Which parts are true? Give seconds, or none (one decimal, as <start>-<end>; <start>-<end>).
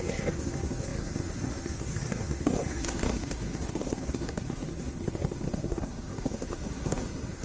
none